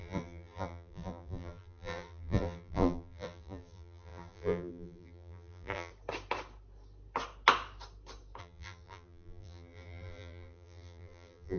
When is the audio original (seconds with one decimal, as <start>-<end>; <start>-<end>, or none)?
5.9-8.4